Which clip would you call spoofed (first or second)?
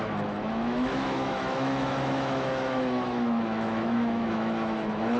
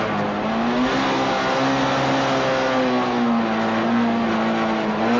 first